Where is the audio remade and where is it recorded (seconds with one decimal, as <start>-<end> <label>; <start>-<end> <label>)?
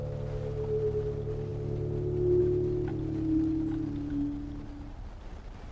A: 0.0-5.7 recorded